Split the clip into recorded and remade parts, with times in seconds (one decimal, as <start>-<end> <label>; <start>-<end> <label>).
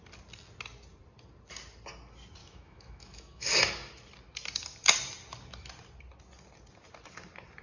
0.0-2.4 recorded; 2.4-3.6 remade; 3.6-7.6 recorded